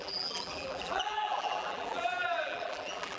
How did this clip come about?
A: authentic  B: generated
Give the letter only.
B